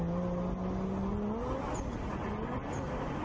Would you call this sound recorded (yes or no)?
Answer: yes